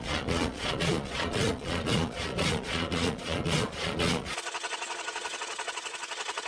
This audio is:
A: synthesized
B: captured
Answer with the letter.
A